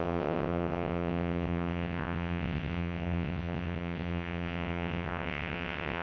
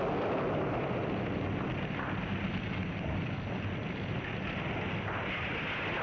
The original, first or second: second